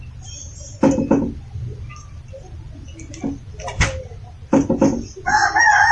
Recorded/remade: recorded